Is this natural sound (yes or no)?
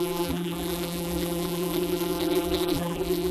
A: no